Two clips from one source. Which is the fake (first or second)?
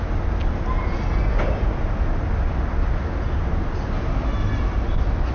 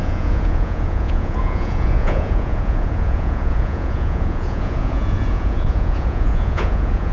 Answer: second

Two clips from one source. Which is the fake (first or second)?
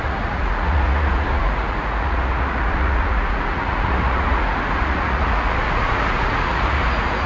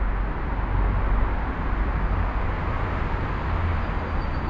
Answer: first